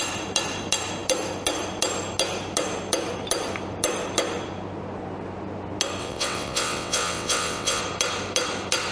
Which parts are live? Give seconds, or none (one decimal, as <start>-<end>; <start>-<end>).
0.0-6.0; 7.8-8.9